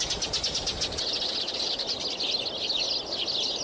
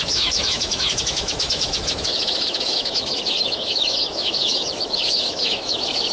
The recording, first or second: first